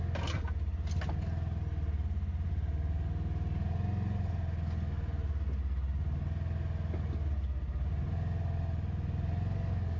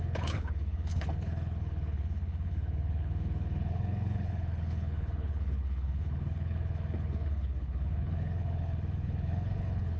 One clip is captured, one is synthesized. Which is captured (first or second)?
first